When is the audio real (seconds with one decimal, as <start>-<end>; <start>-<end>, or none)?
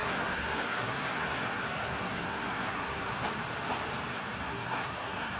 3.2-4.1